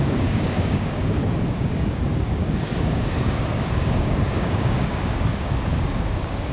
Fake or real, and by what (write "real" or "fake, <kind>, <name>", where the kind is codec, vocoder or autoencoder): fake, codec, DAC